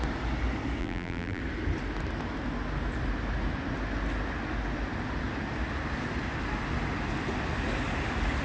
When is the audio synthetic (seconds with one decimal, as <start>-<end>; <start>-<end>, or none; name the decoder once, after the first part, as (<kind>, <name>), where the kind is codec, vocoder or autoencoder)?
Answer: 0.8-1.4 (vocoder, BigVGAN v2)